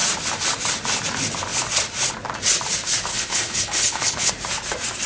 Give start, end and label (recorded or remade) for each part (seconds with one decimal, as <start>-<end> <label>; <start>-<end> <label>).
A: 0.0-3.1 recorded; 3.1-4.3 remade; 4.3-5.1 recorded